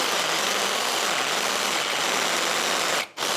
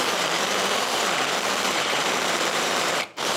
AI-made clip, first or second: second